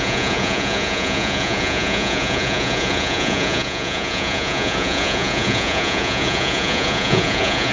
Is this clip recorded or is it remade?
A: remade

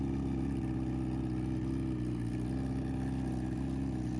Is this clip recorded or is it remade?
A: recorded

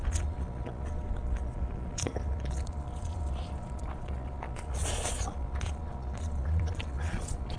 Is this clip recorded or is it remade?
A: remade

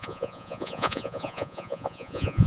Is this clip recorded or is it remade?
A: remade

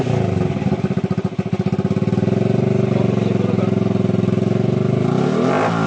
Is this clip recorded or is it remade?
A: recorded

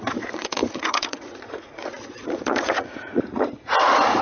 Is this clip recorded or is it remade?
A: remade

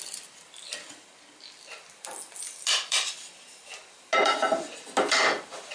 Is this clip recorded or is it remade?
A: recorded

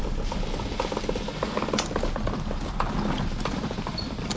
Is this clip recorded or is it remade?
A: recorded